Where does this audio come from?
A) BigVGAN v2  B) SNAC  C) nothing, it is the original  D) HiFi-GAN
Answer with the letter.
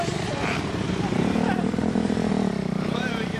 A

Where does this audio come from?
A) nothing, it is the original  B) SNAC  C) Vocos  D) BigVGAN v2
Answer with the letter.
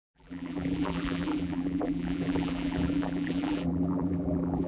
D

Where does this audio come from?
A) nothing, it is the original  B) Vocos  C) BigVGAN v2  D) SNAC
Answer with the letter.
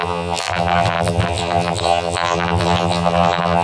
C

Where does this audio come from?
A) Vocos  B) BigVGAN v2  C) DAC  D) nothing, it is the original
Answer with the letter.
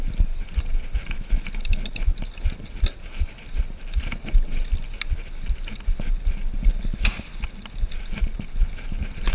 D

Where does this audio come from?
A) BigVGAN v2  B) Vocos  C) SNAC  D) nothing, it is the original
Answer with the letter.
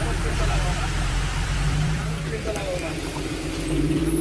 A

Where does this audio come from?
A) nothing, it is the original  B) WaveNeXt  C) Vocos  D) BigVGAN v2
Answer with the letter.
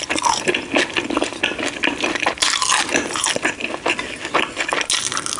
A